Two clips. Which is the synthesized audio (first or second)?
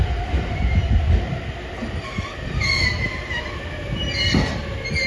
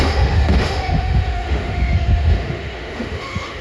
second